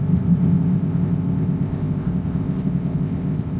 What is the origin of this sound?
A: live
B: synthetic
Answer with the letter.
B